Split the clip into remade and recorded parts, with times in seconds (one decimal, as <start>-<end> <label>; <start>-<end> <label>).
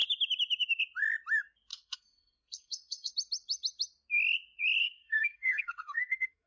0.0-1.7 recorded; 1.7-3.1 remade; 3.1-4.8 recorded; 4.8-6.5 remade